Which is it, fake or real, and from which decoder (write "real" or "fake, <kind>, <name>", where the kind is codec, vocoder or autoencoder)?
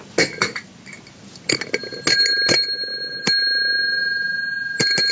real